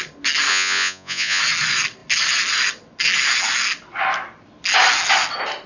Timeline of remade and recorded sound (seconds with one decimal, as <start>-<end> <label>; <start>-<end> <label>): 0.0-0.5 recorded; 0.5-1.4 remade; 1.4-5.7 recorded